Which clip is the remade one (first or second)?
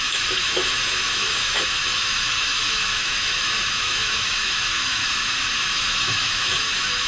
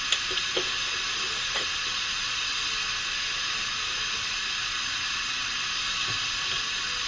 first